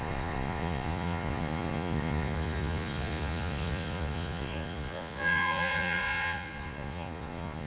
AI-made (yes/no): yes